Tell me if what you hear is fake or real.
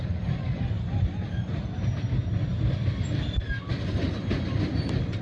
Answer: real